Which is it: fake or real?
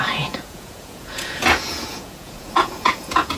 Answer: fake